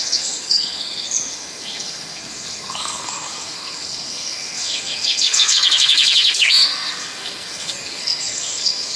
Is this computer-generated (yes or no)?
yes